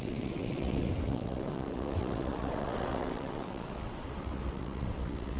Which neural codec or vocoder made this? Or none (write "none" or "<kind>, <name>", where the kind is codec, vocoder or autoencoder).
vocoder, WaveNeXt